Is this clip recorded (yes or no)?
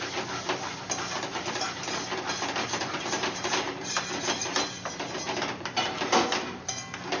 yes